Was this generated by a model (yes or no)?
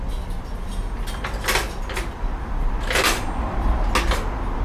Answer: no